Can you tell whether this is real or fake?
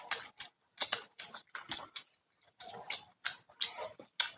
real